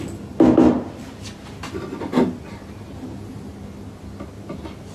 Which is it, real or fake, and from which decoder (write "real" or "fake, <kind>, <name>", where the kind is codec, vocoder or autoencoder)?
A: real